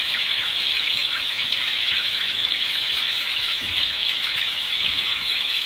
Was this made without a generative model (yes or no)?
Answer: no